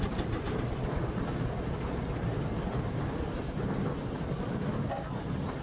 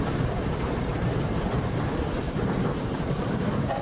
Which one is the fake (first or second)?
second